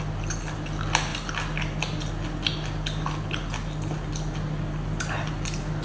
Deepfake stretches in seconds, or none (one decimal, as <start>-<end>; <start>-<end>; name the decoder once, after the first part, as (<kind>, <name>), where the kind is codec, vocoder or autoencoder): none